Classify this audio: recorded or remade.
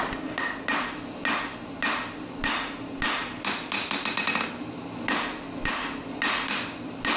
recorded